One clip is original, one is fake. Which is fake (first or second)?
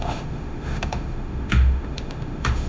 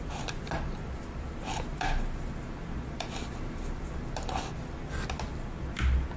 first